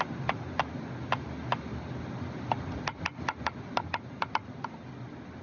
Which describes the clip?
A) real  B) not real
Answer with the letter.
A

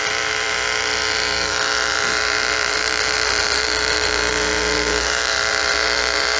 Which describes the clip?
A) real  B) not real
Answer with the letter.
B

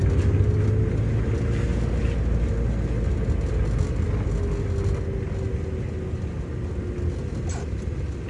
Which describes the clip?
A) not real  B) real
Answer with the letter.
B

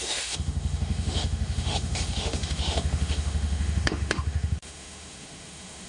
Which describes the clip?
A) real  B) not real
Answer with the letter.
B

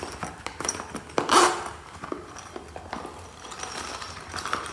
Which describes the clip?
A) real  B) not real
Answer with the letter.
A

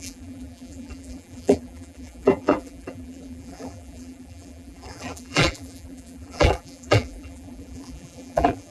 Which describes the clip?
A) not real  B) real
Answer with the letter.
A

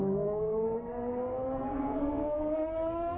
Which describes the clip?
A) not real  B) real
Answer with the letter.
A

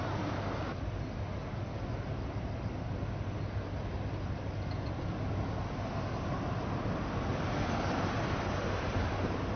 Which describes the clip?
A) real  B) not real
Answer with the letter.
A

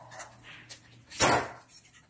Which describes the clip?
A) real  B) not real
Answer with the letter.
A